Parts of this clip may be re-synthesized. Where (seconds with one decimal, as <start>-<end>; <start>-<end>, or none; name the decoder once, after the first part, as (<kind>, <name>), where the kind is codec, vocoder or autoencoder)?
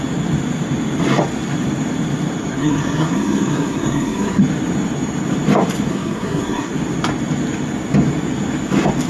2.6-4.4 (codec, SNAC); 5.9-6.7